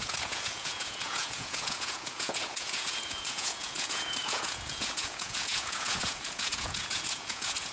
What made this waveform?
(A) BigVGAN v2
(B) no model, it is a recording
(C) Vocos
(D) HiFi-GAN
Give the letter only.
C